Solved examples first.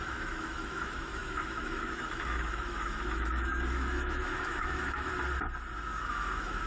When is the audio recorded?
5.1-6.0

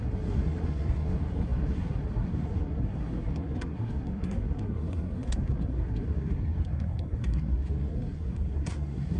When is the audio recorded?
none

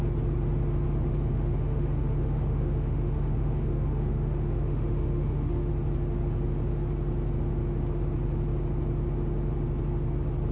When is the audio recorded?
0.0-1.3; 5.7-10.5